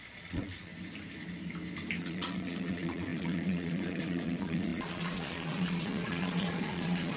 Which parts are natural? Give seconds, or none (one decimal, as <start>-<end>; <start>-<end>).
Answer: 0.7-2.0